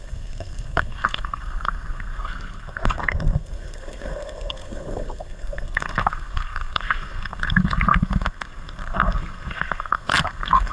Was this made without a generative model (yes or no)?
no